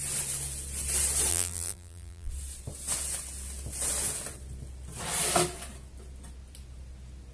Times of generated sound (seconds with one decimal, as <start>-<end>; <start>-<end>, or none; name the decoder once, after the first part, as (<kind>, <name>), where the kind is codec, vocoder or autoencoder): 1.3-2.3 (vocoder, BigVGAN v2)